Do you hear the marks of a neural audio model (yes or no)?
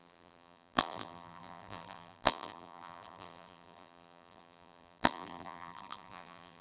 yes